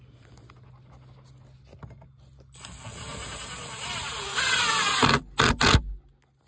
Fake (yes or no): no